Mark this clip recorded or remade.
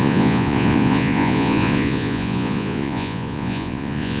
remade